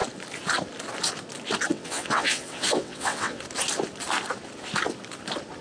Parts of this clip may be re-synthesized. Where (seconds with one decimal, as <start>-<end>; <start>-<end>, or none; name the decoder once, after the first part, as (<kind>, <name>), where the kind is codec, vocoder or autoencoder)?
1.7-3.4 (vocoder, WaveNeXt)